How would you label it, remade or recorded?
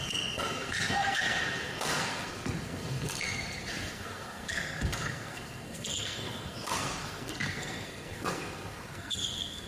remade